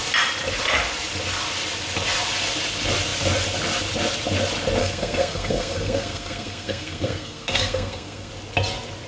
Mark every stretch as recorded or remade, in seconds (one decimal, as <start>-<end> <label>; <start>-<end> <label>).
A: 0.0-4.8 recorded; 4.8-8.3 remade; 8.3-9.1 recorded